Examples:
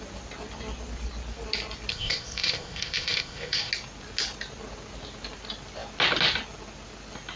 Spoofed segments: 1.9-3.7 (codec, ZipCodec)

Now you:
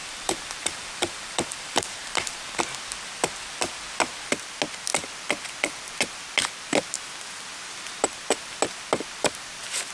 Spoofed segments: 0.0-2.6 (vocoder, BigVGAN v2)

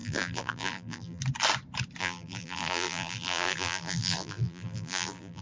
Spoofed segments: 0.0-1.2 (vocoder, BigVGAN v2); 2.0-5.4

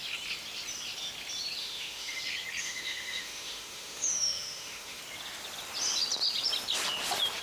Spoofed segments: 1.6-2.2 (autoencoder, DAC-VAE); 2.6-5.0